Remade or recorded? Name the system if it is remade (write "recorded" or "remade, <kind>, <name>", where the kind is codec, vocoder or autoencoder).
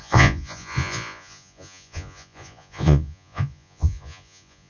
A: remade, vocoder, Vocos